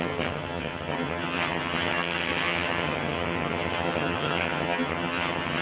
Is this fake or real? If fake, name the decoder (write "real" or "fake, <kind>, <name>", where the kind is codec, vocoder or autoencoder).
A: fake, vocoder, HiFi-GAN